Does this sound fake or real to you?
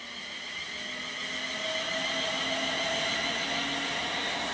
real